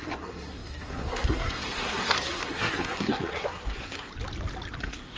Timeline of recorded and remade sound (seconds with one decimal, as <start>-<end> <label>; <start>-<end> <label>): 0.0-4.1 remade; 4.1-4.8 recorded; 4.8-5.2 remade